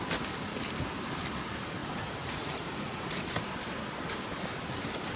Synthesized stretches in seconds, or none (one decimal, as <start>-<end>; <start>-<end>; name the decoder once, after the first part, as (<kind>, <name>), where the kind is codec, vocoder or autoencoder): 1.8-3.2 (vocoder, Vocos)